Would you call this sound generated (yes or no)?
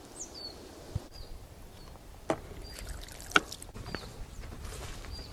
yes